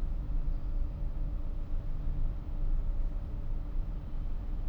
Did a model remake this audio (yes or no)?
no